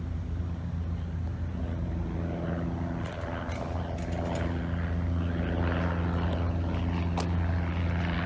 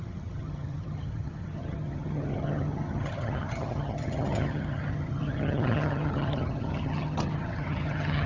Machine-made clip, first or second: second